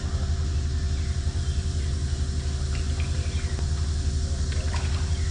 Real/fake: real